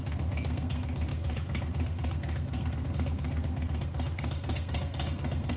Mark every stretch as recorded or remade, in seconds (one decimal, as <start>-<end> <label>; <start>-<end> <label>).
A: 0.0-5.6 remade